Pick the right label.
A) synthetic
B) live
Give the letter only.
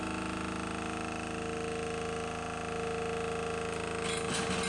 B